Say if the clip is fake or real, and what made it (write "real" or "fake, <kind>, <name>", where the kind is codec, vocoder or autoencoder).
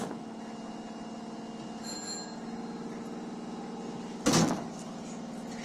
real